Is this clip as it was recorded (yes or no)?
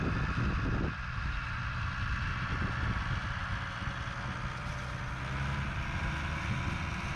yes